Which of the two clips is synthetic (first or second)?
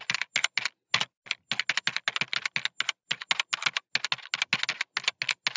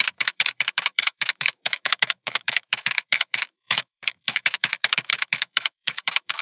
second